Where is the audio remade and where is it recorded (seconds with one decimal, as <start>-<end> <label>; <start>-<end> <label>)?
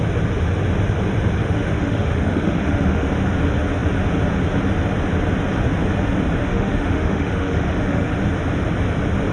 0.0-1.4 recorded; 1.4-3.1 remade; 3.1-6.4 recorded; 6.4-8.1 remade; 8.1-9.3 recorded